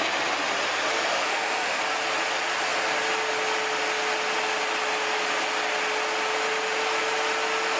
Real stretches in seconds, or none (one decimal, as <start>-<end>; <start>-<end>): 0.0-1.1; 1.8-7.8